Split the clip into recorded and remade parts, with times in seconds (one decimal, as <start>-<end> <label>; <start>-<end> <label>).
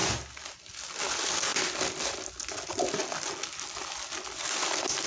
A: 0.0-0.6 remade; 0.6-3.0 recorded; 3.0-4.6 remade; 4.6-5.1 recorded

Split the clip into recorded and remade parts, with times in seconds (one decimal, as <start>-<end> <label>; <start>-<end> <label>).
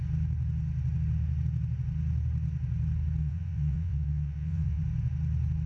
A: 0.0-3.2 recorded; 3.2-4.8 remade; 4.8-5.7 recorded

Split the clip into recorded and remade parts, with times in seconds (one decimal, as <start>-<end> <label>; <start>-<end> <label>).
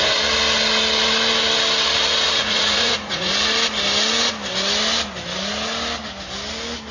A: 0.0-2.4 recorded; 2.4-3.3 remade; 3.3-6.9 recorded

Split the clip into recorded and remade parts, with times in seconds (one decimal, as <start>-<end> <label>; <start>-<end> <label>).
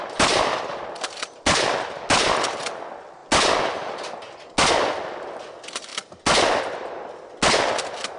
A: 0.0-8.2 recorded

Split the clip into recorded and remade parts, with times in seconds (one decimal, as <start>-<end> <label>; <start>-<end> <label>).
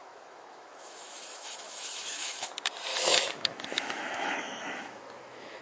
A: 0.0-2.5 remade; 2.5-2.9 recorded; 2.9-5.6 remade